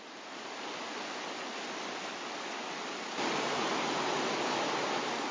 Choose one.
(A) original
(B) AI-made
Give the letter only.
A